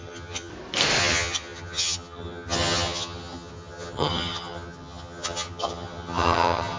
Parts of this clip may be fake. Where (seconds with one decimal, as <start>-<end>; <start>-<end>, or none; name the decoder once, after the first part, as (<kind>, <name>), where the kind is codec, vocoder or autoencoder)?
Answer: 0.0-0.5 (vocoder, HiFi-GAN); 1.0-6.8